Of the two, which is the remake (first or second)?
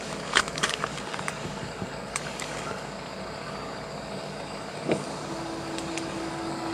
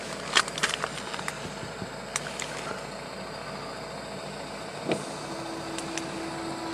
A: first